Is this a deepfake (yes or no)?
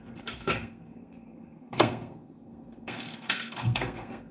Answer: yes